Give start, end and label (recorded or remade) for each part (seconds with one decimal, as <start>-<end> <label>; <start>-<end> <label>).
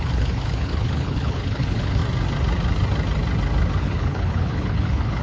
0.0-2.0 remade; 2.0-3.8 recorded; 3.8-5.2 remade